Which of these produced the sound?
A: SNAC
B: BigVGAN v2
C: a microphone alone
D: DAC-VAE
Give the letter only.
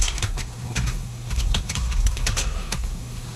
A